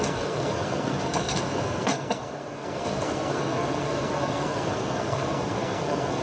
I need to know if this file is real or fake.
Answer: fake